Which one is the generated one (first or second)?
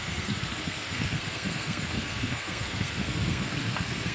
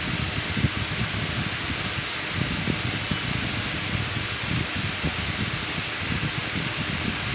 first